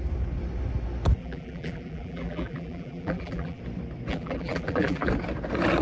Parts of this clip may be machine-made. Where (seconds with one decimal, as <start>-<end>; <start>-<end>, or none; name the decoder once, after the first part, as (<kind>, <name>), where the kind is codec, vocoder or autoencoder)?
1.2-3.6 (vocoder, BigVGAN v2); 4.1-5.1